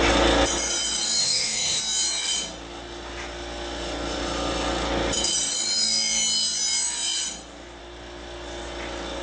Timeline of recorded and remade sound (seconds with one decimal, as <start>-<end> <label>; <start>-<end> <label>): 0.0-1.2 recorded; 1.2-1.8 remade; 1.8-9.2 recorded